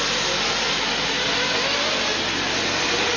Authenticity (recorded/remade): recorded